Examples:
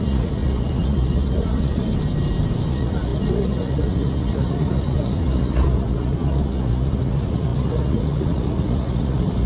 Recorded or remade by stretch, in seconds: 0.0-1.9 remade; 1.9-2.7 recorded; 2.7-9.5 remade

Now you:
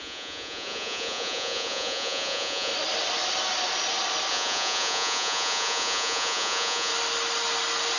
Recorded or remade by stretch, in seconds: 0.0-2.7 remade; 2.7-4.3 recorded; 4.3-6.9 remade; 6.9-8.0 recorded

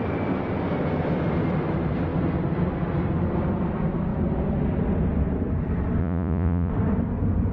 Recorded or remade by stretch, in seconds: 0.0-6.0 recorded; 6.0-6.7 remade; 6.7-7.5 recorded

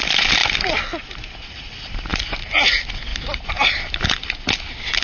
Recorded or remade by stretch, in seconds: 0.0-5.0 recorded

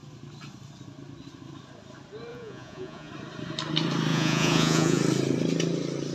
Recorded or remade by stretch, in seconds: 0.0-2.3 recorded; 2.3-3.1 remade; 3.1-4.1 recorded; 4.1-5.0 remade; 5.0-6.1 recorded

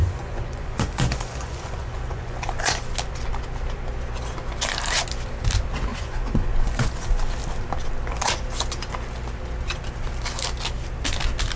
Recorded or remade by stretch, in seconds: 0.0-2.9 remade; 2.9-5.9 recorded; 5.9-7.3 remade; 7.3-11.6 recorded

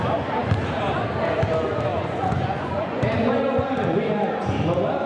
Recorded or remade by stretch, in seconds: 0.0-1.9 recorded; 1.9-4.0 remade; 4.0-5.1 recorded

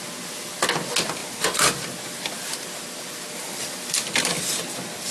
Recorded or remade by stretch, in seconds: 0.0-5.1 recorded